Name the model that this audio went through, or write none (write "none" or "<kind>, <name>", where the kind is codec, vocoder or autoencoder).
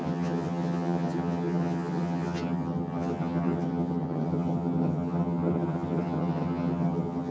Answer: vocoder, HiFi-GAN